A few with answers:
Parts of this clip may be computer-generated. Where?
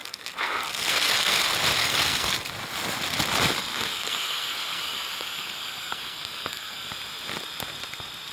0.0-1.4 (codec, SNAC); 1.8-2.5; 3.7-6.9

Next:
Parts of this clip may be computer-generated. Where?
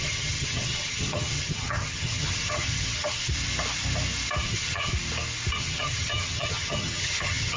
0.0-3.3 (vocoder, HiFi-GAN); 4.4-4.9; 5.6-7.6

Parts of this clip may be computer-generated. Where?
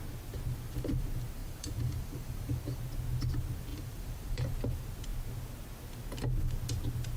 1.4-2.8 (vocoder, BigVGAN v2); 3.7-4.5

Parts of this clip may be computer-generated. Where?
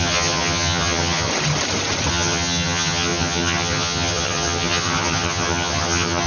0.0-1.3 (vocoder, HiFi-GAN); 2.1-6.3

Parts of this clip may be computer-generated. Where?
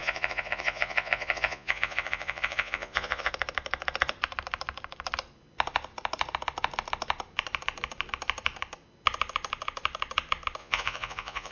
0.0-3.3 (vocoder, Vocos); 10.6-11.5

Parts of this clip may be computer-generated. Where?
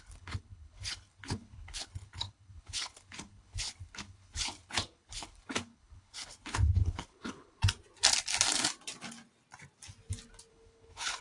0.0-7.6 (codec, HILCodec); 10.5-11.2